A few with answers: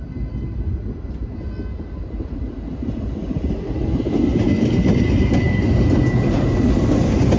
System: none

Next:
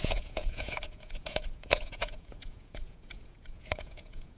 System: vocoder, Vocos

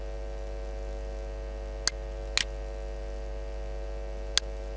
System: none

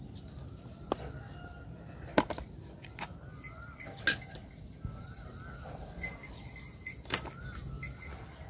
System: none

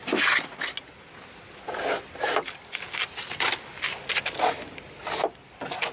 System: none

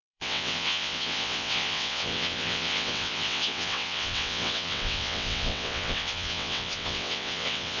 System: vocoder, WaveNeXt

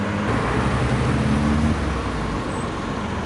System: none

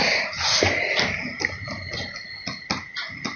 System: none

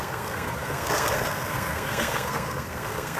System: codec, SNAC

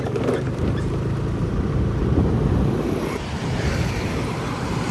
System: vocoder, BigVGAN v2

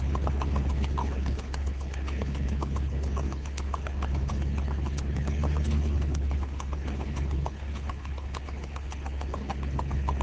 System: codec, HILCodec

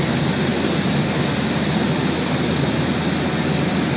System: none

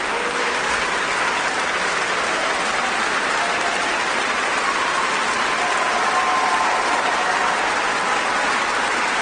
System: none